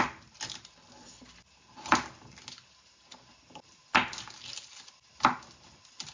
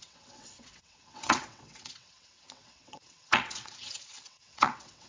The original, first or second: first